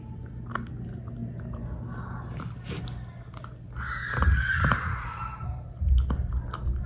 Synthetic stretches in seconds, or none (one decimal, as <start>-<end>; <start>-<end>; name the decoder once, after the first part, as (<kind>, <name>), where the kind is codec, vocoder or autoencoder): none